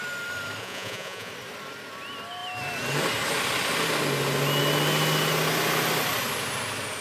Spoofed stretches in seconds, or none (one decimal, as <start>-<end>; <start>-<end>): 0.6-1.3